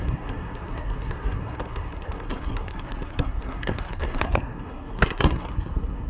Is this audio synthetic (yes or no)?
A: yes